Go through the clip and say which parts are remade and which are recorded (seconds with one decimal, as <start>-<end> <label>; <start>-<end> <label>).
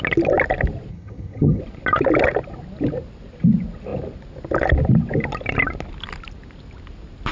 0.0-0.9 recorded; 0.9-1.6 remade; 1.6-7.3 recorded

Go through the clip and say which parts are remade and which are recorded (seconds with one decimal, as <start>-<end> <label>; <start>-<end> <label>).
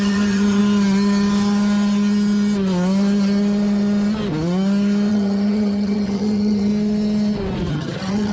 0.0-0.6 remade; 0.6-5.1 recorded; 5.1-6.7 remade; 6.7-7.7 recorded; 7.7-8.3 remade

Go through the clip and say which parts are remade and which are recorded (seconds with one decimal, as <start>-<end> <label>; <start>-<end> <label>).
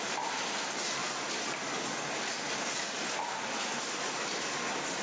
0.0-5.0 recorded